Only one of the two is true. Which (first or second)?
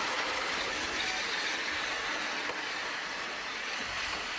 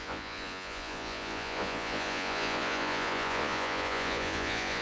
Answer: first